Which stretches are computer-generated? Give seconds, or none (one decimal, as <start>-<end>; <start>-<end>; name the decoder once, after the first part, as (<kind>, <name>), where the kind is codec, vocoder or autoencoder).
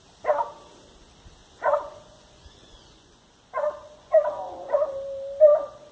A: 1.4-4.9 (vocoder, Vocos)